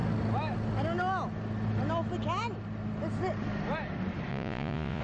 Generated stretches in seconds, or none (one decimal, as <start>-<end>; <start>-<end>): 4.3-5.0